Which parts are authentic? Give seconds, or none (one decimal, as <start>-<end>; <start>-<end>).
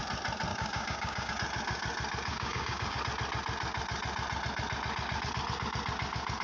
0.0-0.5; 1.3-2.3; 3.0-6.4